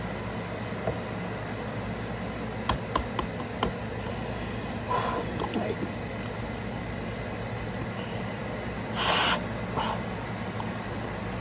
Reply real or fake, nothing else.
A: real